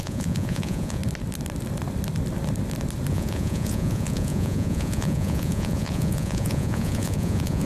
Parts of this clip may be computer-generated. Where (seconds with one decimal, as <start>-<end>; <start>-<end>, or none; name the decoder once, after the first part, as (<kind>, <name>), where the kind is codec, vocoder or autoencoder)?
0.0-1.0 (vocoder, Vocos); 3.1-7.7